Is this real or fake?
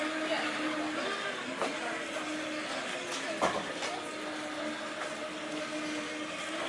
real